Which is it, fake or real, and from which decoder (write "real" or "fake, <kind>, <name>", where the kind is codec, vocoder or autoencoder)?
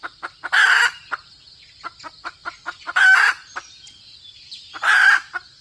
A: real